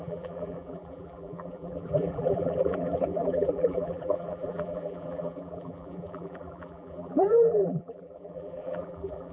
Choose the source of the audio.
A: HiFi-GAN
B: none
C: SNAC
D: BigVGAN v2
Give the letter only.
D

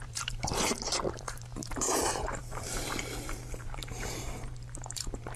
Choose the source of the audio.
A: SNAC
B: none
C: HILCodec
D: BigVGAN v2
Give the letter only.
D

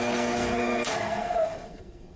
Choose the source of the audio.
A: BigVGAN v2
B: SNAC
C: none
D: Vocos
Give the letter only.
B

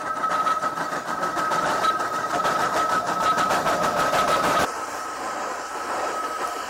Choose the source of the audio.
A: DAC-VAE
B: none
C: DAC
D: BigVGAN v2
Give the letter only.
D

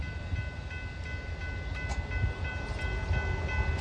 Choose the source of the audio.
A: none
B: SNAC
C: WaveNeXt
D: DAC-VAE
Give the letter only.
A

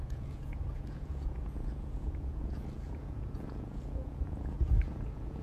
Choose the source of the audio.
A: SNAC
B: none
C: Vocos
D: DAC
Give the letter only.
C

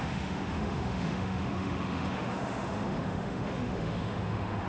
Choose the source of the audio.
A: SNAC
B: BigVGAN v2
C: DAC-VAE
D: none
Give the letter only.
C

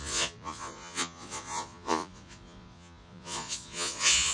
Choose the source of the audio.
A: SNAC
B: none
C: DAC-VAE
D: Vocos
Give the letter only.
D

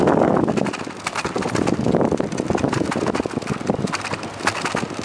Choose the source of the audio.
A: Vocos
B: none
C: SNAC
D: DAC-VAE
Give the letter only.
B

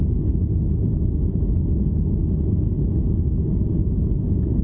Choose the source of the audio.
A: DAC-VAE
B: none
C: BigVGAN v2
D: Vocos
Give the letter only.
B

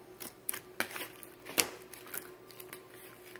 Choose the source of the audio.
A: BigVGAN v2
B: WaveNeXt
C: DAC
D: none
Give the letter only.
D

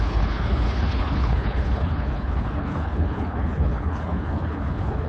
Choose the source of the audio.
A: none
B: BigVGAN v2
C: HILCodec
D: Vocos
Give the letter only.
C